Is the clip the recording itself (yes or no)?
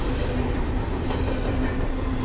yes